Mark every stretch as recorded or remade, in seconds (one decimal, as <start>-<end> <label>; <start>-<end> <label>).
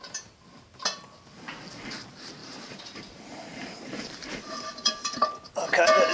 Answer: 0.0-2.4 recorded; 2.4-4.9 remade; 4.9-6.1 recorded